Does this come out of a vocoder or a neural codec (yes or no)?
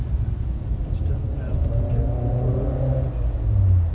no